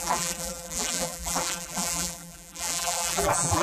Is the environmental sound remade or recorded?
remade